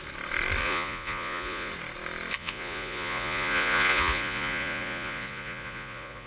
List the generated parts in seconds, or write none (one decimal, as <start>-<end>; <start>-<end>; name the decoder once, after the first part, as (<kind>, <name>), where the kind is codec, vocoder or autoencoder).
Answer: 0.6-1.7 (vocoder, Vocos); 2.3-6.3